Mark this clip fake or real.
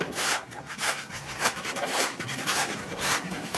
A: fake